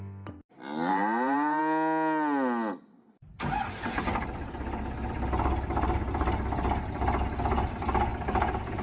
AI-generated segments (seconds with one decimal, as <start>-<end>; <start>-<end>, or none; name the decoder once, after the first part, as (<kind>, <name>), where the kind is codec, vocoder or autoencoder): 0.9-1.6 (vocoder, BigVGAN v2); 8.1-8.8